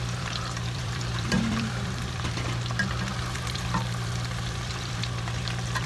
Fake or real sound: fake